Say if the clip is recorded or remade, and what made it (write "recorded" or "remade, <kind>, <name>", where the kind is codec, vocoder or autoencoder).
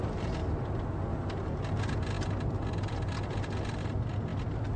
recorded